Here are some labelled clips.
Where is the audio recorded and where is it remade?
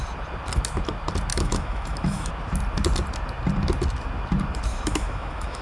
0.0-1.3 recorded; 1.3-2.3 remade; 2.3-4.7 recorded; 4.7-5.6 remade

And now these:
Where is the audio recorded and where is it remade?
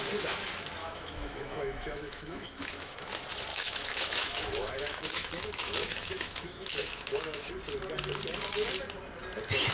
0.0-0.8 recorded; 0.8-3.1 remade; 3.1-3.5 recorded; 3.5-7.5 remade; 7.5-9.7 recorded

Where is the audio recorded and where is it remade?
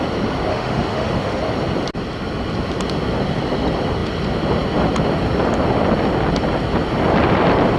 0.0-0.5 recorded; 0.5-1.4 remade; 1.4-7.8 recorded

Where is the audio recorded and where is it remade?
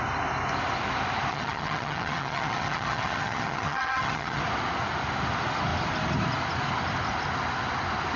0.0-1.3 recorded; 1.3-4.4 remade; 4.4-8.2 recorded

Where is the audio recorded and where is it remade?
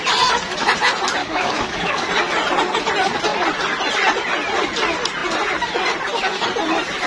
0.0-1.2 recorded; 1.2-2.1 remade; 2.1-7.1 recorded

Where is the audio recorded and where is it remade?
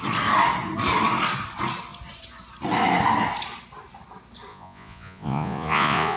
0.0-4.5 recorded; 4.5-6.2 remade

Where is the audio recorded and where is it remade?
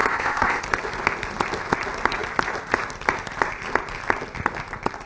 0.0-0.6 remade; 0.6-5.1 recorded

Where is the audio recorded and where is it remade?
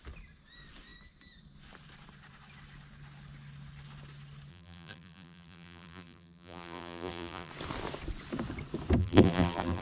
0.0-4.5 recorded; 4.5-7.5 remade; 7.5-9.0 recorded; 9.0-9.8 remade